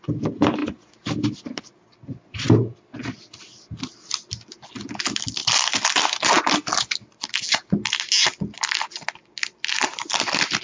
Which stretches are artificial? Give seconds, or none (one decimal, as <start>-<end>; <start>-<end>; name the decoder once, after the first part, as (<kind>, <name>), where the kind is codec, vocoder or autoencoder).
none